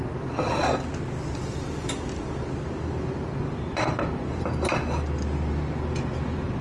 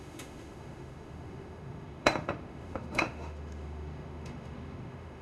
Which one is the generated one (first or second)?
second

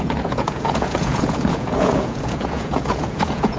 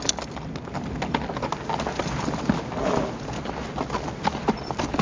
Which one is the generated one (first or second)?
first